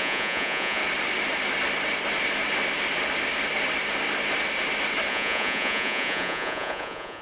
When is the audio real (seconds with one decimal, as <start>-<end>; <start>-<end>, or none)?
0.8-5.1